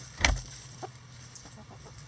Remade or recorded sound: recorded